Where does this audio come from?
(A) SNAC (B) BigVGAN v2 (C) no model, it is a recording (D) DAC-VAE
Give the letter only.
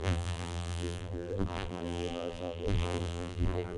B